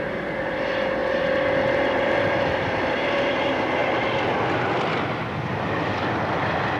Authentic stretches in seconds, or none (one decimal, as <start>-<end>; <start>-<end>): 0.0-3.8; 5.1-6.8